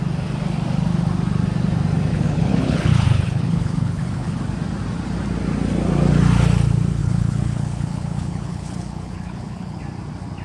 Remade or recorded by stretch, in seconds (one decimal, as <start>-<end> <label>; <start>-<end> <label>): 0.0-2.1 recorded; 2.1-4.4 remade; 4.4-7.0 recorded; 7.0-9.8 remade; 9.8-10.4 recorded